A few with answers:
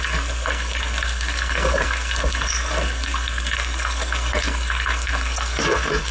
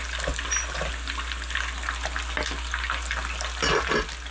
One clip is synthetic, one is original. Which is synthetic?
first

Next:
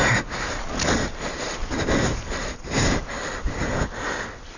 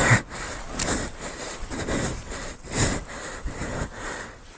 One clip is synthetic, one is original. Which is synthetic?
second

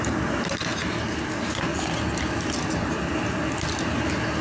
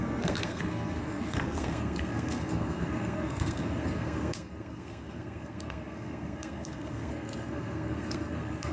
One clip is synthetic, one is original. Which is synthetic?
second